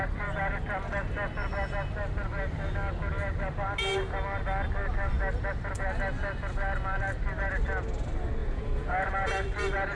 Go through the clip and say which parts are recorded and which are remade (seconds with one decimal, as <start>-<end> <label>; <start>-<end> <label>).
0.0-8.4 recorded; 8.4-9.1 remade; 9.1-9.9 recorded